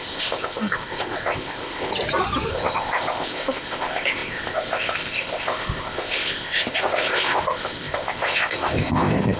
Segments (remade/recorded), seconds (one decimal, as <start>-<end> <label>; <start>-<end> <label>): 0.0-1.9 remade; 1.9-2.5 recorded; 2.5-9.4 remade